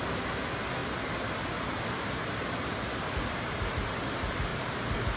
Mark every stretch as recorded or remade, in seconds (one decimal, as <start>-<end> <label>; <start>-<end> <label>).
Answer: 0.0-5.2 recorded